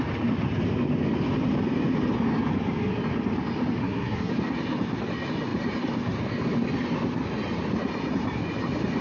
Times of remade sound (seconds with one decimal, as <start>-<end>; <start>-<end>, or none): 3.8-4.3